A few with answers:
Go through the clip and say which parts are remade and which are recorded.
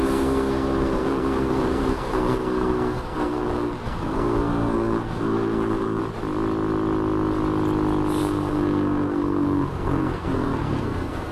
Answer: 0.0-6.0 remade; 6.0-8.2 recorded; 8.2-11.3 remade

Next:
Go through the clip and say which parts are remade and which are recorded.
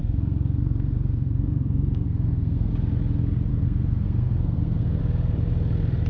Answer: 0.0-2.7 remade; 2.7-3.5 recorded; 3.5-5.0 remade; 5.0-6.1 recorded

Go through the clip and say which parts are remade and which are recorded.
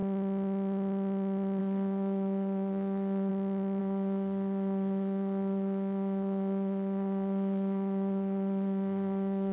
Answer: 0.0-1.6 recorded; 1.6-3.3 remade; 3.3-3.8 recorded; 3.8-9.5 remade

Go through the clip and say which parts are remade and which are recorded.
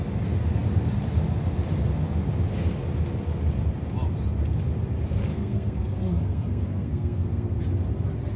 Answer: 0.0-5.3 recorded; 5.3-7.6 remade; 7.6-8.4 recorded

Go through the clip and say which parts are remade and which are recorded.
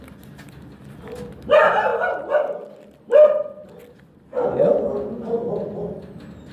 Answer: 0.0-6.5 recorded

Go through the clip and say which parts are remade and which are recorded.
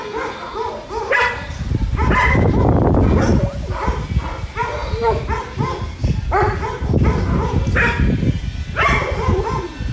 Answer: 0.0-9.9 recorded